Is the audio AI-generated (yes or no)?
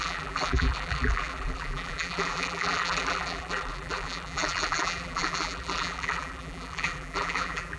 yes